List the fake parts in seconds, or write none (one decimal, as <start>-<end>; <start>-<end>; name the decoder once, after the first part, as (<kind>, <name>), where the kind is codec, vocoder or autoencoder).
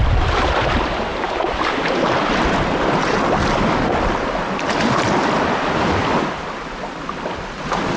none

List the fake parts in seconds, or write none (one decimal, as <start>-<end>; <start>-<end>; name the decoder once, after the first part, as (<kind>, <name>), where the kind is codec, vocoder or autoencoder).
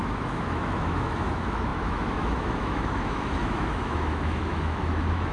0.0-5.3 (autoencoder, DAC-VAE)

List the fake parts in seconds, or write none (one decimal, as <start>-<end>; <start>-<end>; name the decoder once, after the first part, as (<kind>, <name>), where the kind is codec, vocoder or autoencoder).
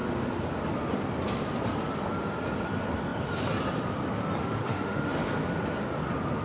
4.6-5.1 (autoencoder, DAC-VAE)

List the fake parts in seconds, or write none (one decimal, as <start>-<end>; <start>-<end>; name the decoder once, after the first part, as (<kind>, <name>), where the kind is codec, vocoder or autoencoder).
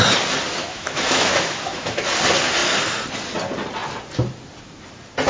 0.6-2.0 (autoencoder, DAC-VAE)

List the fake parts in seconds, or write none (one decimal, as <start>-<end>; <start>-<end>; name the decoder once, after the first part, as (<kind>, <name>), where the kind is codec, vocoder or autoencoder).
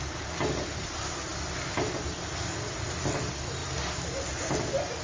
none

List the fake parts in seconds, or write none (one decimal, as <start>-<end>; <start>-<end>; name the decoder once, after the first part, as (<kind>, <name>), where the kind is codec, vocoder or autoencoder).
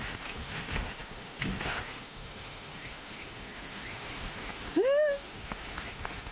0.0-6.3 (autoencoder, DAC-VAE)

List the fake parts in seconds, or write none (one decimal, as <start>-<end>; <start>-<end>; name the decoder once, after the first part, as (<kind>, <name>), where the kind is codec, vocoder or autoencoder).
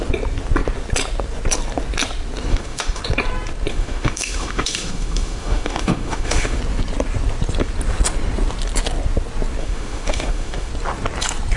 2.5-3.0 (autoencoder, DAC-VAE); 3.7-6.6; 9.6-10.7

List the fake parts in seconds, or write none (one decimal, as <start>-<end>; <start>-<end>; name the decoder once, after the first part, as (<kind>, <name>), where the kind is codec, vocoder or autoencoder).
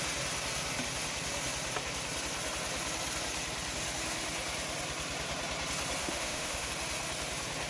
6.0-6.7 (autoencoder, DAC-VAE)